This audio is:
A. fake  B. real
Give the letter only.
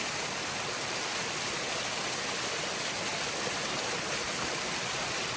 B